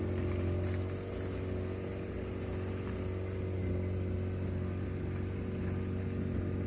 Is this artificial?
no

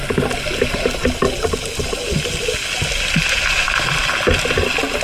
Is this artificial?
no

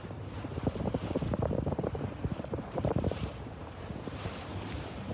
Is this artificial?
yes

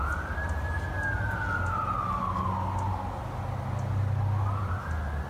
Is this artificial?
no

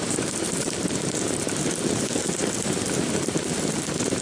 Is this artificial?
yes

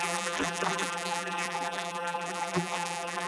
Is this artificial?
yes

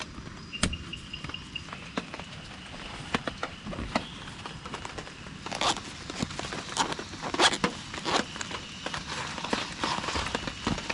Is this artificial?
no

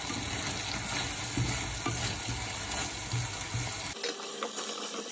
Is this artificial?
no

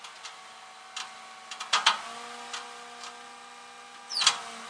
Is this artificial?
no